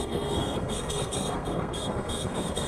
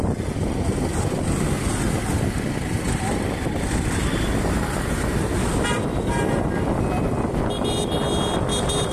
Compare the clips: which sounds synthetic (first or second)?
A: first